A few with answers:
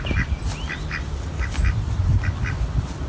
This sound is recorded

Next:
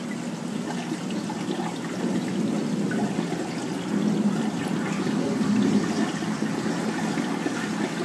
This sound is recorded